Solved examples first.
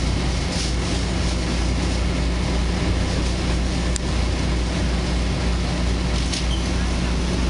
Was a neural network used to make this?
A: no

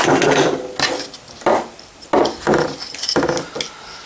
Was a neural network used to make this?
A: no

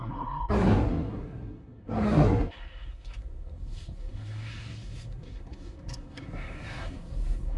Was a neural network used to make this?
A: yes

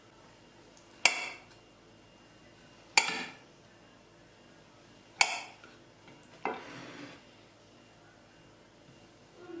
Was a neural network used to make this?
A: no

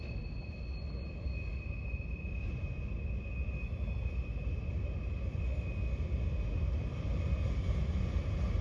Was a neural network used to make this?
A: no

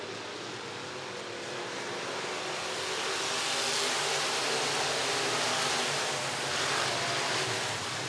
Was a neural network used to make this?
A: no